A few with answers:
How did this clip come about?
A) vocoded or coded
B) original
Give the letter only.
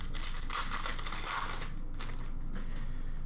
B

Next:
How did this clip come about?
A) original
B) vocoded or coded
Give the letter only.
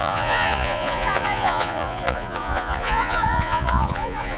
B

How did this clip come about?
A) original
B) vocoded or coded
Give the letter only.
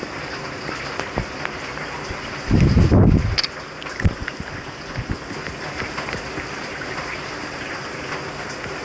A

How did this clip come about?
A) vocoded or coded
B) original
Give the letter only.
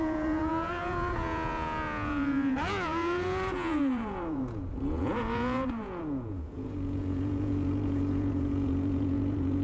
A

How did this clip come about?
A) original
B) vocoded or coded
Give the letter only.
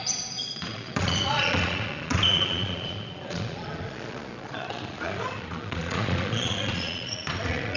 B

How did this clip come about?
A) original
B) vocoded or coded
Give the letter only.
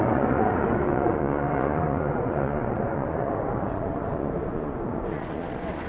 B